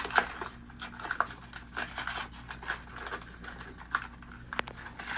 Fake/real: real